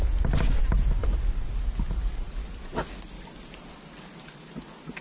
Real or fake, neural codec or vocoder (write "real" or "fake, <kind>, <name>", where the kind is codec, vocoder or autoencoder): real